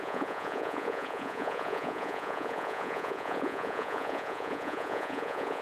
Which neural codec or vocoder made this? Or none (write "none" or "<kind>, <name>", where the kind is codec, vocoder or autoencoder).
vocoder, Vocos